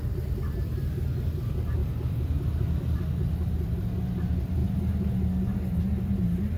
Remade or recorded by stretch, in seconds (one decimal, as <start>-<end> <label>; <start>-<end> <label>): 0.0-6.6 recorded